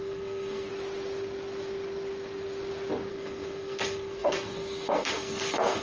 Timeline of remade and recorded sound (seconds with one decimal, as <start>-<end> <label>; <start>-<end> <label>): 0.0-0.7 remade; 0.7-3.1 recorded; 3.1-5.8 remade